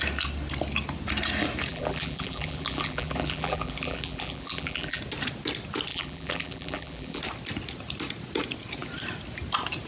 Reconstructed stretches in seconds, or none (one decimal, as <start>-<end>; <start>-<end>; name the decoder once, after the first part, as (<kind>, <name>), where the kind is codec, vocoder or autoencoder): 1.7-5.0 (vocoder, BigVGAN v2); 5.9-7.2